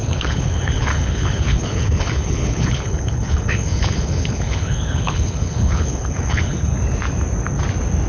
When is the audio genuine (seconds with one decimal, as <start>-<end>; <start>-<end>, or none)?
6.7-8.1